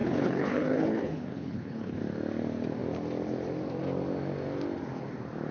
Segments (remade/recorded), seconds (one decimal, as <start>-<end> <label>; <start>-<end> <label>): 0.0-2.0 remade; 2.0-5.5 recorded